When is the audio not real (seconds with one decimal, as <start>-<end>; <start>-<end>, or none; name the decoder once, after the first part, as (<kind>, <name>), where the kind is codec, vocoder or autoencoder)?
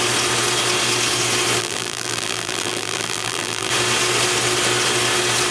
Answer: 1.6-3.7 (vocoder, BigVGAN v2)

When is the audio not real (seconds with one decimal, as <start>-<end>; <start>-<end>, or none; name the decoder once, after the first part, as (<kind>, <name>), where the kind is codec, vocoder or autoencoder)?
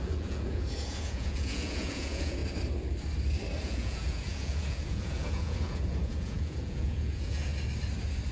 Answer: 0.0-2.4 (vocoder, Vocos); 3.6-7.5